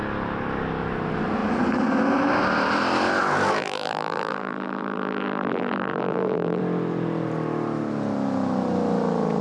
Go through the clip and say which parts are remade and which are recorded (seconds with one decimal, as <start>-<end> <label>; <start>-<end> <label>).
0.0-3.6 recorded; 3.6-6.6 remade; 6.6-9.4 recorded